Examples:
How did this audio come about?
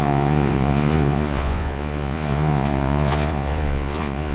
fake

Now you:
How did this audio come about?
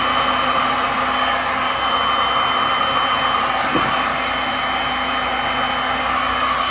real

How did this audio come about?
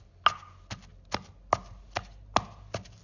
real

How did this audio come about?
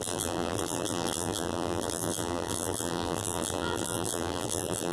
fake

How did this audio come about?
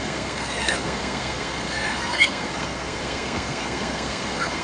fake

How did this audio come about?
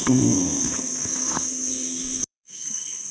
fake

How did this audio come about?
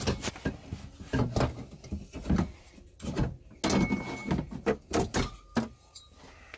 real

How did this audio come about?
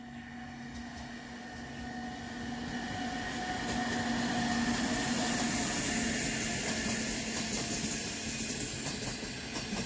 real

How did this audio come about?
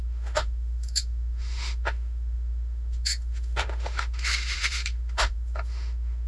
fake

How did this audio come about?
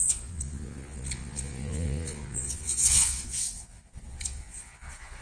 fake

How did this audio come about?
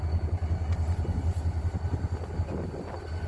real